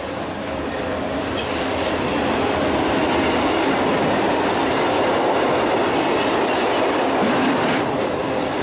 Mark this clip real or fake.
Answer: real